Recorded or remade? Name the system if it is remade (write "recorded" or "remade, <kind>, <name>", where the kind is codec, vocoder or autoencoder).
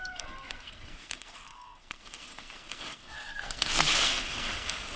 remade, codec, SNAC